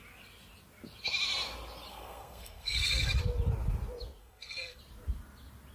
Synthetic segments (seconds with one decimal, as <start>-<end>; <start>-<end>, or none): 1.9-3.2; 4.2-4.8